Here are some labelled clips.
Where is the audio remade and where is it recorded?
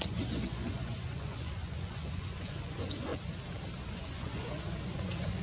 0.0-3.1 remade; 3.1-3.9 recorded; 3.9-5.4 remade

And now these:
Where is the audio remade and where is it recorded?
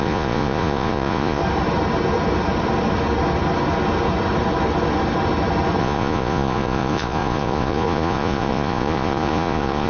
0.0-1.4 remade; 1.4-5.8 recorded; 5.8-9.9 remade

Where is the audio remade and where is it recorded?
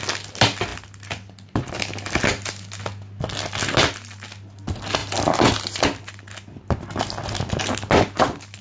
0.0-8.6 recorded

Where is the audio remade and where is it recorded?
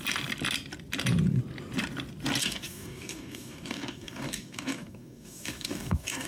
0.0-2.4 recorded; 2.4-6.3 remade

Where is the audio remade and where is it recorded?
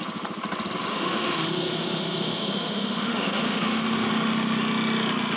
0.0-0.9 recorded; 0.9-4.1 remade; 4.1-5.4 recorded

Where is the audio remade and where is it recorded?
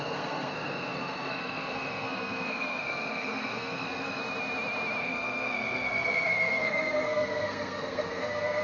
0.0-4.2 remade; 4.2-5.0 recorded; 5.0-8.6 remade